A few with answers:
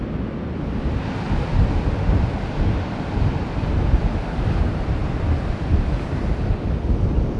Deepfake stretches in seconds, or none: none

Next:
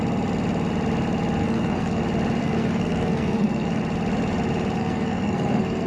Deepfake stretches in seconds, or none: 1.4-2.0 (codec, SNAC); 2.4-3.8; 4.8-5.9

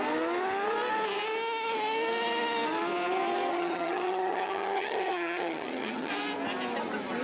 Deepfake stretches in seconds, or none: 3.5-6.1 (vocoder, HiFi-GAN)

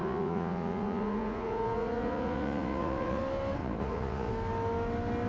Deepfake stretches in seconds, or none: 0.0-3.2 (vocoder, Vocos); 3.6-4.3

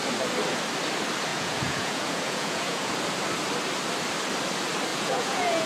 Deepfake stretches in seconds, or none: 1.3-2.9 (vocoder, Vocos); 4.9-5.7

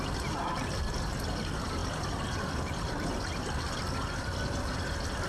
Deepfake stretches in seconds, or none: none

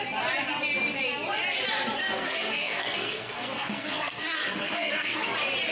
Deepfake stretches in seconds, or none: 2.0-5.3 (codec, SNAC)

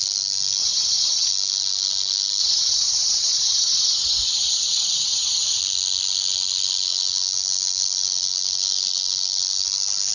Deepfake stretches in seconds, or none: 0.6-1.3 (vocoder, Vocos); 2.4-5.6